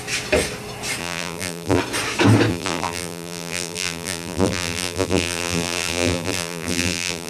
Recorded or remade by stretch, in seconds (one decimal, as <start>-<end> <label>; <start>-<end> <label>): 0.0-1.0 recorded; 1.0-1.8 remade; 1.8-2.5 recorded; 2.5-7.3 remade